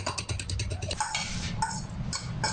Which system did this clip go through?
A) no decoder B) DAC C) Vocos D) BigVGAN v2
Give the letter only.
A